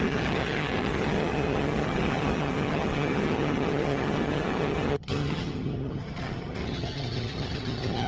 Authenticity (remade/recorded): remade